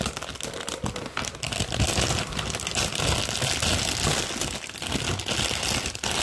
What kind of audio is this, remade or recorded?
recorded